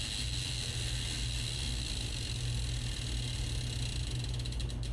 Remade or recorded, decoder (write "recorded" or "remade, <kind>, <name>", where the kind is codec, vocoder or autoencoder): recorded